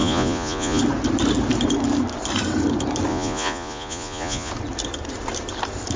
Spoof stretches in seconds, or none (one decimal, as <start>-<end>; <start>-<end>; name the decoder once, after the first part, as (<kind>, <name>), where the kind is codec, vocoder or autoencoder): 0.0-0.8 (vocoder, Vocos); 3.1-4.5